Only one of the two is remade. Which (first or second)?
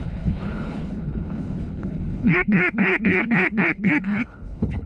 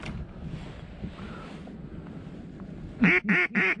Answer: first